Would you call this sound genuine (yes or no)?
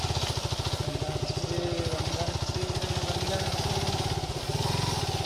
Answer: yes